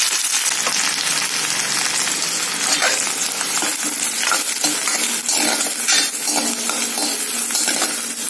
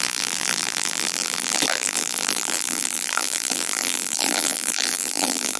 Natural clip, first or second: first